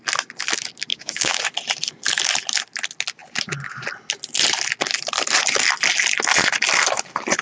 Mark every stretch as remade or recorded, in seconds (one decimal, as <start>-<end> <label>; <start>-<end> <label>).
0.0-0.9 recorded; 0.9-1.4 remade; 1.4-7.4 recorded